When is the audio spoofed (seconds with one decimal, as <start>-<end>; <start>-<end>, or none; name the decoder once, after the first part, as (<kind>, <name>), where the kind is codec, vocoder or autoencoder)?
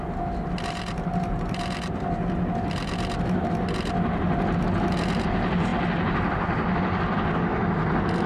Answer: none